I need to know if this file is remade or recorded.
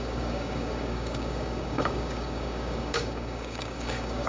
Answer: remade